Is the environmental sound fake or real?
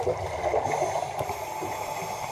real